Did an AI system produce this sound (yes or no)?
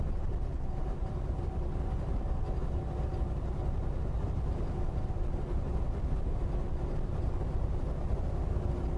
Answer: no